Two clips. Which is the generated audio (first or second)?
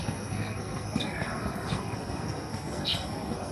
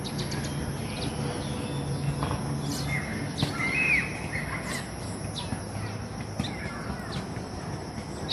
first